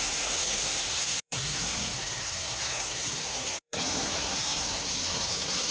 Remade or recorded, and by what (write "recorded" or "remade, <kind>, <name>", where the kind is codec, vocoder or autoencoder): remade, codec, SNAC